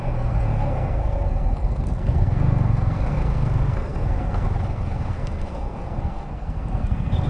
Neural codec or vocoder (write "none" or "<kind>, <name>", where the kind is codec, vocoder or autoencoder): codec, SNAC